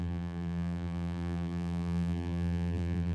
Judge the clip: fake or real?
fake